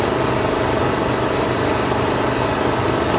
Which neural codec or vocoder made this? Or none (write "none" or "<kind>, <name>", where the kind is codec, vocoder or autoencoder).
none